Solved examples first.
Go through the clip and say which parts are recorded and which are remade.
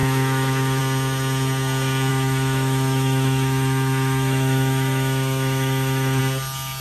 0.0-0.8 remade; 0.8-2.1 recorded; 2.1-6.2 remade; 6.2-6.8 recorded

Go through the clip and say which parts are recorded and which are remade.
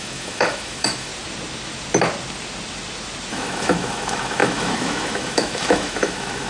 0.0-1.1 remade; 1.1-3.3 recorded; 3.3-6.5 remade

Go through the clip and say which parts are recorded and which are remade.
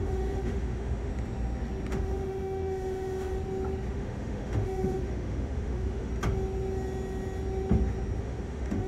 0.0-1.1 remade; 1.1-1.9 recorded; 1.9-3.3 remade; 3.3-3.9 recorded; 3.9-6.1 remade; 6.1-8.2 recorded; 8.2-8.9 remade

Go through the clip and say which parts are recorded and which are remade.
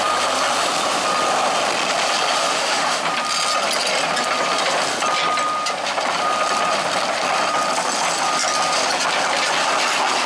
0.0-2.4 recorded; 2.4-3.0 remade; 3.0-10.3 recorded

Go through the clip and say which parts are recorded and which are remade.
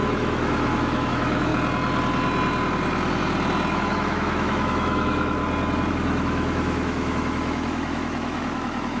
0.0-1.5 remade; 1.5-3.7 recorded; 3.7-5.4 remade; 5.4-5.9 recorded; 5.9-9.0 remade